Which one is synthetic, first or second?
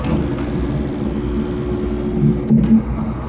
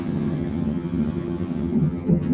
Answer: second